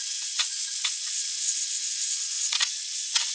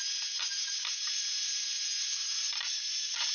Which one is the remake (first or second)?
first